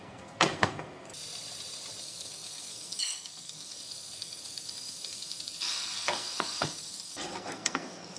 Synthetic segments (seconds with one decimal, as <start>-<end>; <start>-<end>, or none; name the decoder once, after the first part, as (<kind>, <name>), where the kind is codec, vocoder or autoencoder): 0.0-1.1 (codec, SNAC); 2.0-8.2